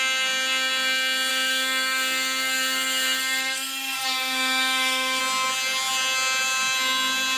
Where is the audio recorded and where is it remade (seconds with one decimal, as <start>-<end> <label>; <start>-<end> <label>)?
0.0-1.3 recorded; 1.3-5.2 remade; 5.2-7.4 recorded